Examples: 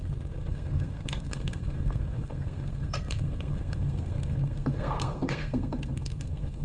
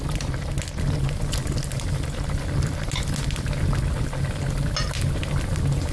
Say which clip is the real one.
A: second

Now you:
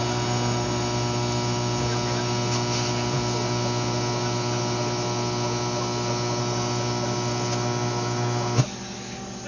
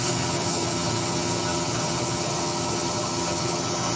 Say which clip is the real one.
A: first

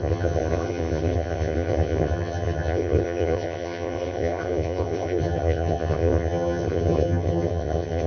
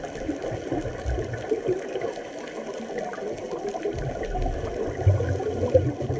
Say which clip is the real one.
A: second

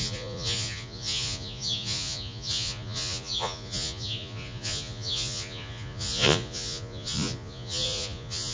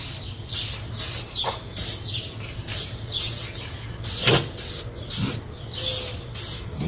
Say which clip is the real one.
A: second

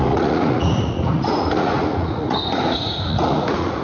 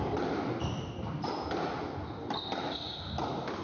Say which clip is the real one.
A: second